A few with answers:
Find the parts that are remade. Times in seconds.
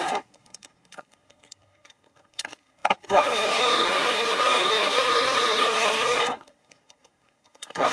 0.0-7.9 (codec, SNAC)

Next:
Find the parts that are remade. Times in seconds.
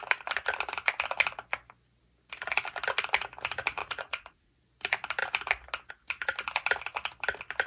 3.8-4.6 (vocoder, Vocos)